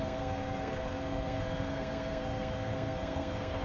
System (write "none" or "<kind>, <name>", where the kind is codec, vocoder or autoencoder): codec, SNAC